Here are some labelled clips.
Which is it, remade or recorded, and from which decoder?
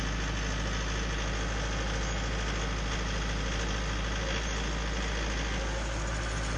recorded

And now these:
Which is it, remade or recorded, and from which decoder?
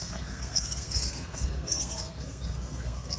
remade, codec, SNAC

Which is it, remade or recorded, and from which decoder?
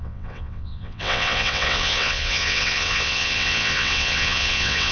remade, vocoder, WaveNeXt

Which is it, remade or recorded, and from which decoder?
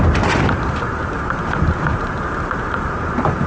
remade, vocoder, BigVGAN v2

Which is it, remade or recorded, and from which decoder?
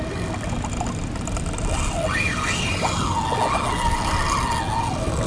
recorded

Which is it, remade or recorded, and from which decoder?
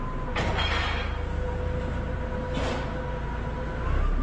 recorded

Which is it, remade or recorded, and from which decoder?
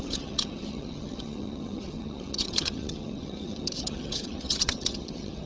remade, vocoder, HiFi-GAN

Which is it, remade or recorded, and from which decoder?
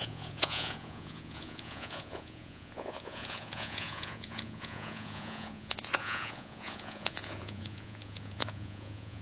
remade, vocoder, Vocos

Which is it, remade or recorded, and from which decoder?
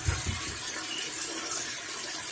recorded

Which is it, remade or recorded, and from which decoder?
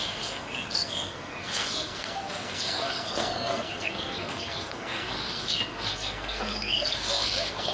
remade, codec, SNAC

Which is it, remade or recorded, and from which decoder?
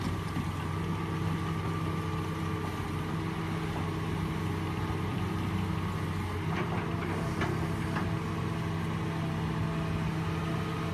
recorded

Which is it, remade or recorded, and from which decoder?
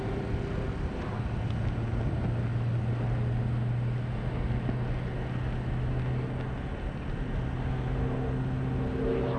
recorded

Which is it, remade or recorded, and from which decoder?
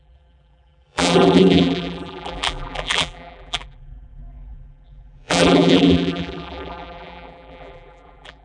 remade, vocoder, BigVGAN v2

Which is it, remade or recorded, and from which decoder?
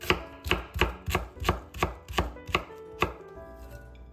recorded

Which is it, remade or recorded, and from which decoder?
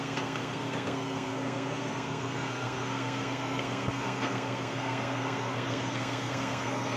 remade, codec, SNAC